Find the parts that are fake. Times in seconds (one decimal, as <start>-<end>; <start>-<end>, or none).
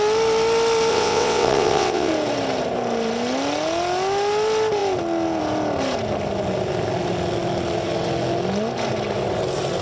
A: 0.9-2.1